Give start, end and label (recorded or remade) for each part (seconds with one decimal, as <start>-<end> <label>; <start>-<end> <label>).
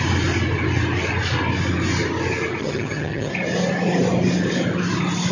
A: 0.0-2.6 recorded; 2.6-3.3 remade; 3.3-5.3 recorded